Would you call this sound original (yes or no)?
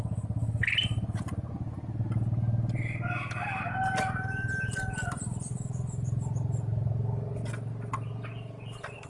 no